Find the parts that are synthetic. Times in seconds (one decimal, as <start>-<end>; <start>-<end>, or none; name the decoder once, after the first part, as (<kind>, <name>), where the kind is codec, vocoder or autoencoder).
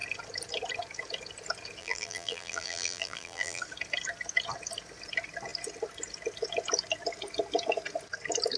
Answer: 1.8-3.6 (vocoder, BigVGAN v2)